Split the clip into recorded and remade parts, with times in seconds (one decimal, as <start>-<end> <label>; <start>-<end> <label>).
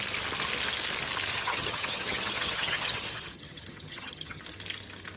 0.0-1.3 recorded; 1.3-4.4 remade; 4.4-5.2 recorded